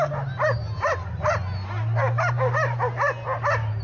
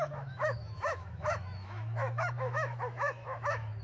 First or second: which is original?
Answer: first